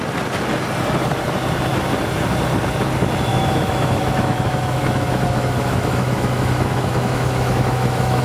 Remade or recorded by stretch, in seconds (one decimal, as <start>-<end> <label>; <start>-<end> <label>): 0.0-3.3 recorded; 3.3-8.2 remade